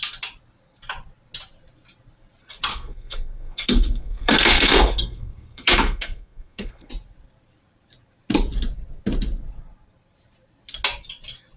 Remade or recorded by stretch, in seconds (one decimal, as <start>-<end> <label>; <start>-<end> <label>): 0.0-2.7 recorded; 2.7-6.9 remade; 6.9-11.6 recorded